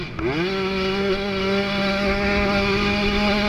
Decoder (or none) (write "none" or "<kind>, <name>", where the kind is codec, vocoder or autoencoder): none